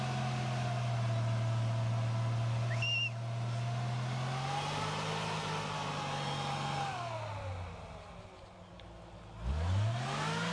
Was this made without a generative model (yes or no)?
yes